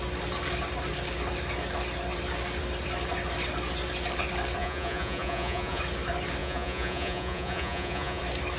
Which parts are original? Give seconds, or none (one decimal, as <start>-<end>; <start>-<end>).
0.0-4.6; 5.8-6.4; 8.2-8.6